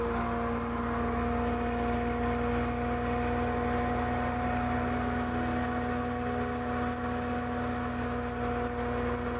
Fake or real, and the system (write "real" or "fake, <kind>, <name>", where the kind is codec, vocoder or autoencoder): real